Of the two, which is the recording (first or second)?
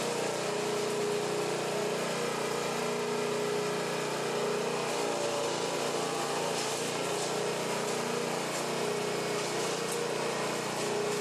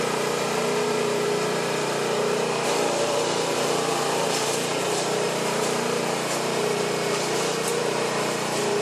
first